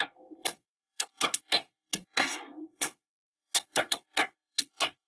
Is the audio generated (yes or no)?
yes